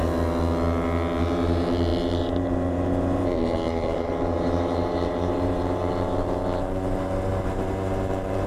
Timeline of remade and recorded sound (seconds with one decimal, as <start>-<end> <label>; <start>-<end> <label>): 0.0-1.2 recorded; 1.2-8.5 remade